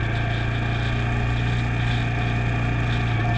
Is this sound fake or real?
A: real